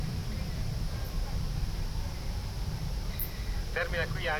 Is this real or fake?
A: fake